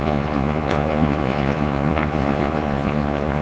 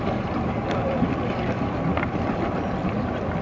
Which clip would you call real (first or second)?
second